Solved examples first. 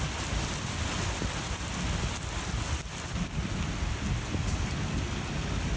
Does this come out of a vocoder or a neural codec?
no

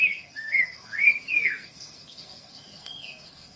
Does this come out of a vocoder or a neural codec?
yes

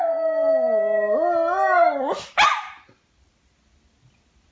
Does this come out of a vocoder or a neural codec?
no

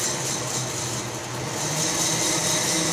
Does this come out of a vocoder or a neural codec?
no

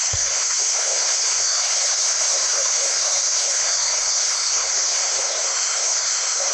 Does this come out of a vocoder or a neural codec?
yes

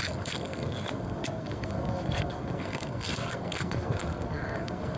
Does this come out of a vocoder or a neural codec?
yes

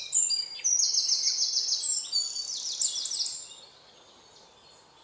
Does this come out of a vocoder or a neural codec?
no